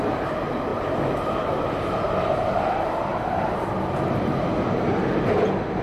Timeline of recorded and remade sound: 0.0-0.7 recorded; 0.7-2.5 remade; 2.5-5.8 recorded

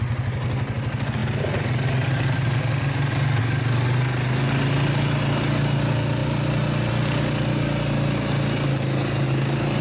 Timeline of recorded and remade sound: 0.0-9.8 recorded

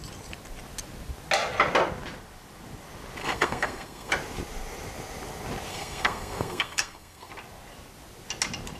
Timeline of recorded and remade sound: 0.0-3.2 recorded; 3.2-4.1 remade; 4.1-5.7 recorded; 5.7-7.3 remade; 7.3-8.8 recorded